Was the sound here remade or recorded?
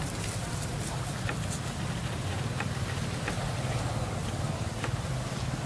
recorded